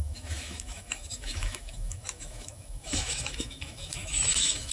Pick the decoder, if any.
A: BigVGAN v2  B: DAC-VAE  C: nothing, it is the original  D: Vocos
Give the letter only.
B